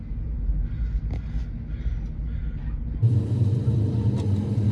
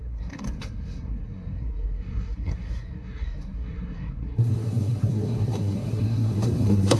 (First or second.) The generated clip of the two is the second